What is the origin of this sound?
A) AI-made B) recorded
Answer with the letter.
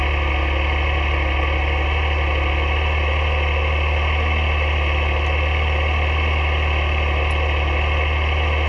B